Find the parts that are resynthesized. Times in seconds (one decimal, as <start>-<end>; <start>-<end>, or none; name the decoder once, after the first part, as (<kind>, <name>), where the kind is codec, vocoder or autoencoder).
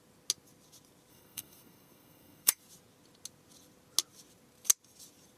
1.1-2.6 (codec, SNAC)